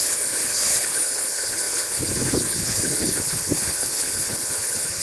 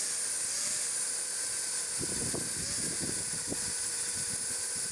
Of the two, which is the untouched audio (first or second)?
second